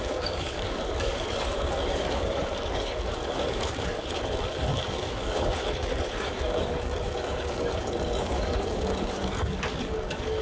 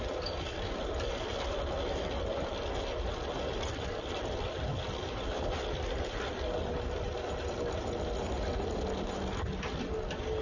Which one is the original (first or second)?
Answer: second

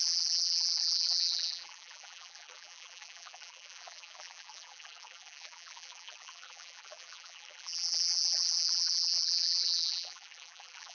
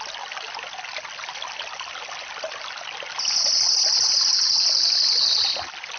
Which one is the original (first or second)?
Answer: second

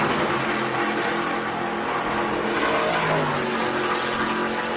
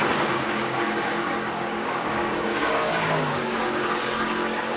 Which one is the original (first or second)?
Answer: first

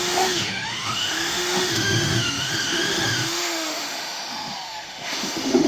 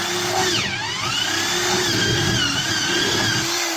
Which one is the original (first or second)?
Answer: second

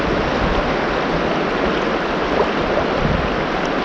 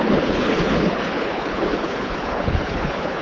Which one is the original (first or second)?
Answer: first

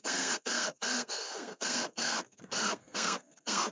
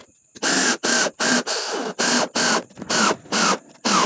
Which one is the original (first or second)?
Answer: second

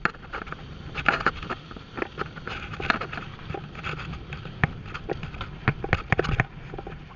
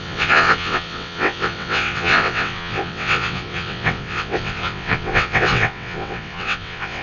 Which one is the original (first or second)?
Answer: first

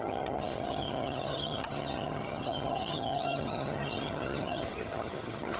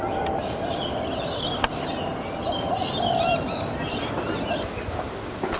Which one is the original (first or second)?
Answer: second